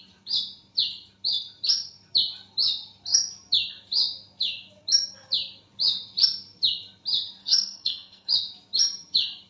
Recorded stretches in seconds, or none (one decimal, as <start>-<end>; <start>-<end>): 0.0-7.4; 8.3-9.5